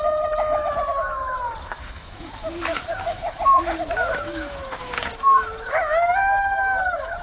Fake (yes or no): yes